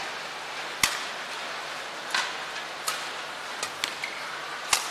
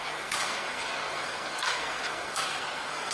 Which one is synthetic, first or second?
second